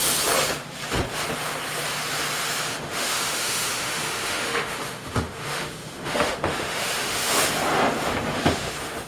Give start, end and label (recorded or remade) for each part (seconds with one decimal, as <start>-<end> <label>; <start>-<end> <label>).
0.0-2.7 recorded; 2.7-7.5 remade; 7.5-8.3 recorded; 8.3-9.1 remade